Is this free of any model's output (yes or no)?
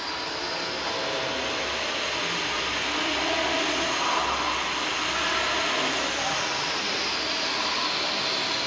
yes